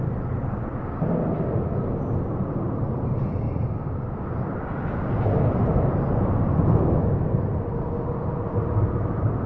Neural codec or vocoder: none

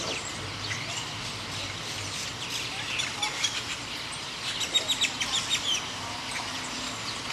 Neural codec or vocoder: none